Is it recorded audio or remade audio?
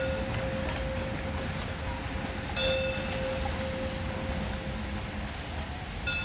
recorded